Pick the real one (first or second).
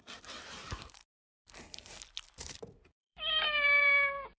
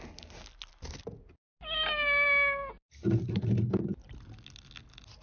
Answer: second